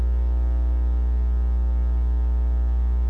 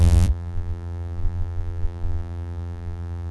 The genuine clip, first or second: first